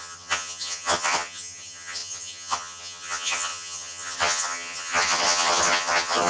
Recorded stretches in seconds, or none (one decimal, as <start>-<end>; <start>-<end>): none

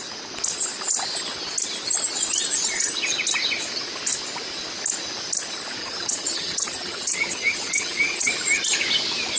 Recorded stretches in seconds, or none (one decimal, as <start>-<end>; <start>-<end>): 0.0-5.8; 8.3-9.4

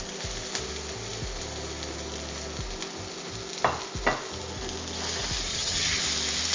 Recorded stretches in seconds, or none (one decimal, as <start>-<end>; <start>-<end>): 0.0-5.5; 6.0-6.5

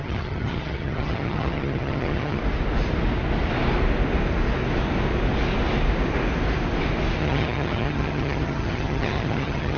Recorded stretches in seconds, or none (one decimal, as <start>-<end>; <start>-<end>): 2.4-7.2

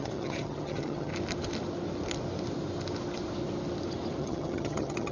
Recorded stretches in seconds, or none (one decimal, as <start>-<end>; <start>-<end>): 1.1-4.2